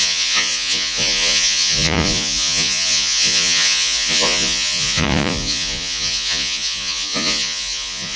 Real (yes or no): no